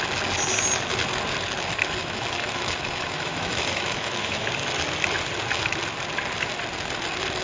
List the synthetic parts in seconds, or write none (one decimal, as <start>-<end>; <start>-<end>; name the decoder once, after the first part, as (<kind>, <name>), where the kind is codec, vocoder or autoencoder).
2.0-4.4 (autoencoder, DAC-VAE)